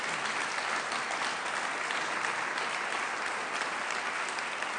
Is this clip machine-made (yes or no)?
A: no